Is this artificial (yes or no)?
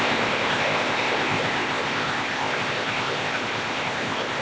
yes